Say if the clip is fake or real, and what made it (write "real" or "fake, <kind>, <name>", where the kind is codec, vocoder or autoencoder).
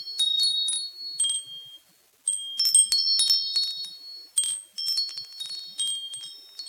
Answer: real